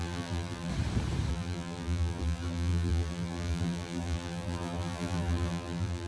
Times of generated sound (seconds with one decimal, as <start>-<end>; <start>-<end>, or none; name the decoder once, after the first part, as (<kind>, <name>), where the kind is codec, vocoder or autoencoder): 0.0-0.7 (vocoder, BigVGAN v2); 1.3-6.1